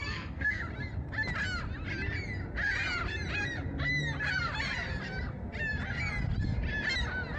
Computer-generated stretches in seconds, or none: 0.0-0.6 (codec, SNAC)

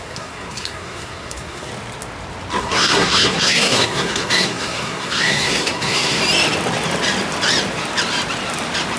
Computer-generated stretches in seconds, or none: 0.0-1.7 (codec, SNAC); 2.6-6.2

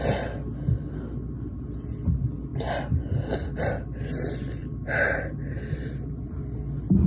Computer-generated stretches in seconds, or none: 4.6-6.6 (vocoder, BigVGAN v2)

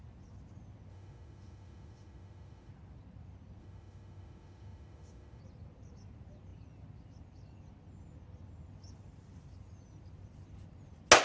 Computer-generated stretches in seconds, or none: 0.9-2.7 (autoencoder, DAC-VAE); 3.6-5.4

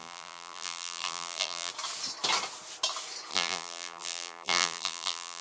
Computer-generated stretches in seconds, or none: 0.0-1.7 (vocoder, BigVGAN v2); 3.3-5.4

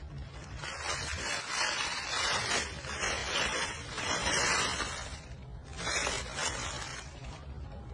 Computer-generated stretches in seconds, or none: 6.9-7.9 (vocoder, BigVGAN v2)